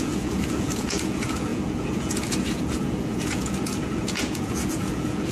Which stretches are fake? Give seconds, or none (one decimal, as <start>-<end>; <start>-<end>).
0.0-5.3